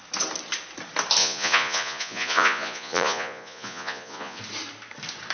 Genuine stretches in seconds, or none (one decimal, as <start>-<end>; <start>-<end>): 0.0-1.2; 4.4-5.3